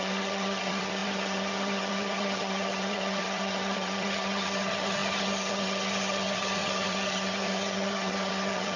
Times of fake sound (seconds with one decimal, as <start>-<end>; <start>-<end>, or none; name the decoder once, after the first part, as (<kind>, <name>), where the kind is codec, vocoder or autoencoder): 0.0-8.8 (vocoder, HiFi-GAN)